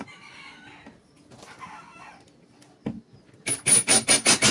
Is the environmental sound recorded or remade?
recorded